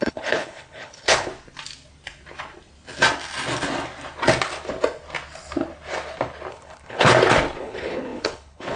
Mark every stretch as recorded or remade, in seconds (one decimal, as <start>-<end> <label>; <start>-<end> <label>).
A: 0.0-1.3 remade; 1.3-6.5 recorded; 6.5-7.1 remade; 7.1-7.6 recorded; 7.6-8.8 remade